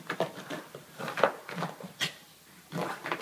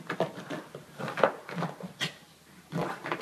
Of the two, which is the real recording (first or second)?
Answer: second